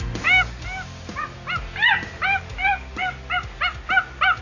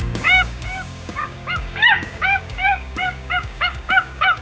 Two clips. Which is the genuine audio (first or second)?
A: first